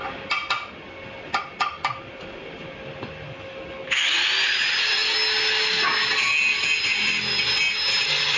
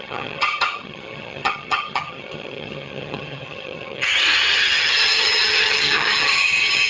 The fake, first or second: second